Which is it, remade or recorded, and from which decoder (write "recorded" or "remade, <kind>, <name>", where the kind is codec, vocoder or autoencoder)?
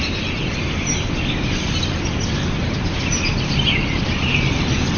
remade, vocoder, BigVGAN v2